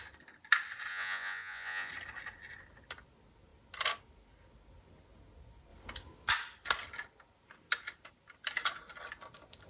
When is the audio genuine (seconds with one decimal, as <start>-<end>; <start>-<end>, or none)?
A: 0.0-0.9; 1.9-9.7